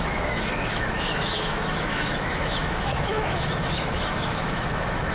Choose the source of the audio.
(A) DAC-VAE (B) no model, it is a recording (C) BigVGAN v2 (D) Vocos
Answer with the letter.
A